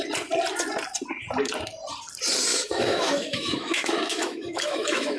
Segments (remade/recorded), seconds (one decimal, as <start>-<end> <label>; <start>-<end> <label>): 0.0-2.5 recorded; 2.5-5.2 remade